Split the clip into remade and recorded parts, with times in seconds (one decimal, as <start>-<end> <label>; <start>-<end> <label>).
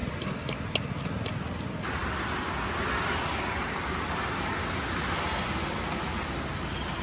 0.0-7.0 recorded